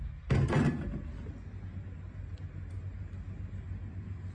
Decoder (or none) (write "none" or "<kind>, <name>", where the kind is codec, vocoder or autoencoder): none